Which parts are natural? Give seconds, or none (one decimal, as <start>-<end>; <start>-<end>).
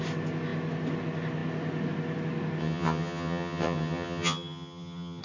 0.0-2.6